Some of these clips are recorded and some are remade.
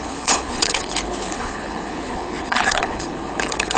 remade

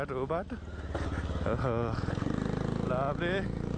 recorded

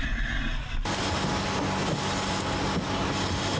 recorded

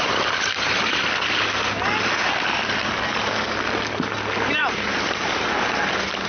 recorded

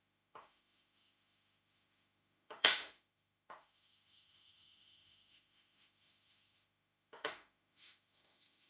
remade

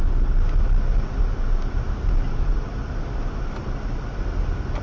recorded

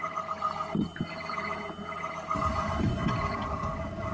recorded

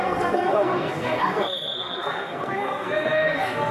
remade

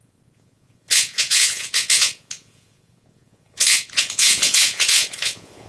remade